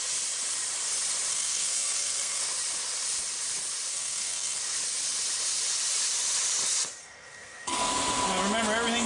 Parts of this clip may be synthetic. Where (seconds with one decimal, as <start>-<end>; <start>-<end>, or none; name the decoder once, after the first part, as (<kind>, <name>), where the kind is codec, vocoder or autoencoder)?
1.3-2.4 (codec, SNAC); 3.9-4.6; 7.0-7.9